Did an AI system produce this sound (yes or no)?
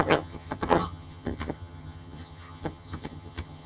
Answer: yes